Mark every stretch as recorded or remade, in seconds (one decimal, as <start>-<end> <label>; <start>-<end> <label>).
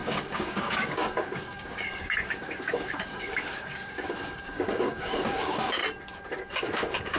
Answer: 0.0-5.8 remade; 5.8-6.5 recorded; 6.5-7.2 remade